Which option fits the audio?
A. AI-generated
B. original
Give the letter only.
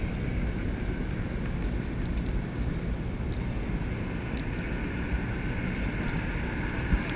B